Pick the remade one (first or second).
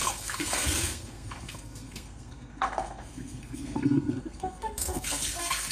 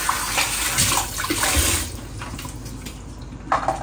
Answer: first